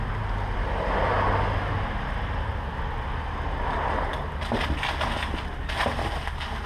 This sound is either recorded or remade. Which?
recorded